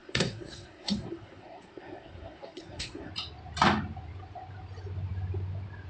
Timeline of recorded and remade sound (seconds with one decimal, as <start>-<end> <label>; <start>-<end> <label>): 0.0-3.1 remade; 3.1-5.9 recorded